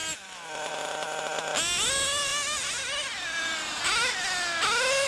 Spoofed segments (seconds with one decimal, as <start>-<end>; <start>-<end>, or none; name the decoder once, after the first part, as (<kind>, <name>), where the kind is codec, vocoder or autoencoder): none